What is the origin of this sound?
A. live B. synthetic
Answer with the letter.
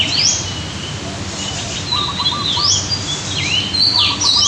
A